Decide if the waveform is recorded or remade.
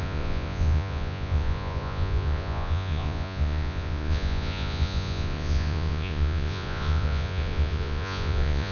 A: remade